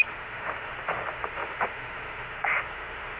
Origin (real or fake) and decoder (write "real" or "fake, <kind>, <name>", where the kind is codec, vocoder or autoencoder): fake, autoencoder, DAC-VAE